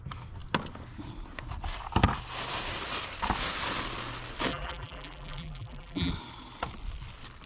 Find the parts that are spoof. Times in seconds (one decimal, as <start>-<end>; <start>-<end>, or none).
4.5-6.1